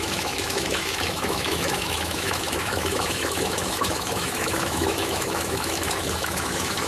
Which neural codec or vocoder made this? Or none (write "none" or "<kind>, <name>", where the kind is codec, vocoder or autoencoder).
autoencoder, DAC-VAE